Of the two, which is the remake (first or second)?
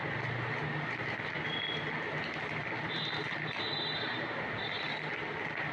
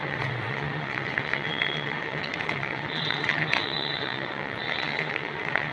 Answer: second